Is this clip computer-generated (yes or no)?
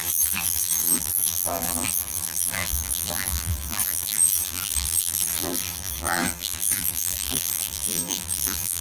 yes